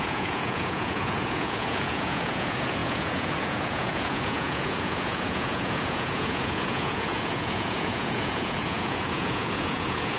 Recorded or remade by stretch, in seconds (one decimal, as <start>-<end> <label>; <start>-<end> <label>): 0.0-10.2 remade